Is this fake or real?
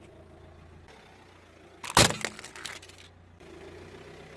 real